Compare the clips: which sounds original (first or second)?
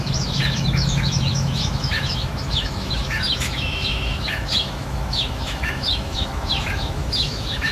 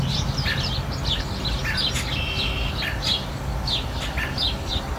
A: second